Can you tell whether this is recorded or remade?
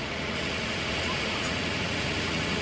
remade